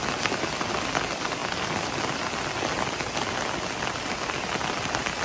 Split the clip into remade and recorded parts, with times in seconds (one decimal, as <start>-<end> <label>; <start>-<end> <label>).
0.0-5.2 recorded